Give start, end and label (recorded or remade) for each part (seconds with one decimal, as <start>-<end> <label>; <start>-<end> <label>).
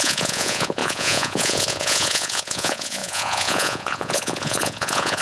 0.0-5.2 remade